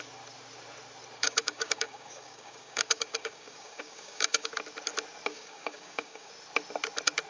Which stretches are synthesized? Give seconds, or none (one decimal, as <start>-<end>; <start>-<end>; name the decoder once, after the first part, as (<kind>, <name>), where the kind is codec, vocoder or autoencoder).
1.2-4.5 (codec, DAC); 5.3-6.3